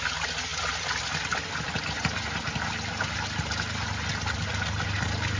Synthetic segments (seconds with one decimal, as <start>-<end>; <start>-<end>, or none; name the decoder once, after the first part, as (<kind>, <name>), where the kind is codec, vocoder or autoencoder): none